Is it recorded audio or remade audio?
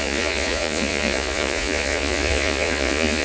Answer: remade